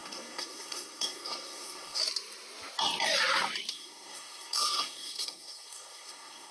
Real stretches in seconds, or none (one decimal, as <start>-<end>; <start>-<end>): 2.0-3.7